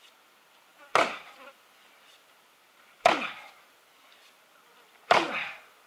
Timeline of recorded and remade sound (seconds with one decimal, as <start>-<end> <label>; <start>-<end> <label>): 0.0-5.9 recorded